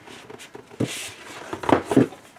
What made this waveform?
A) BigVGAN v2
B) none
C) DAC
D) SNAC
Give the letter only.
B